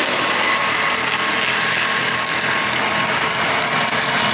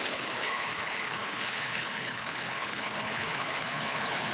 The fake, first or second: second